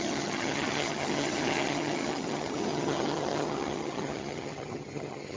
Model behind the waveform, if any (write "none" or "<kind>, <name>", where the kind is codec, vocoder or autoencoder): vocoder, HiFi-GAN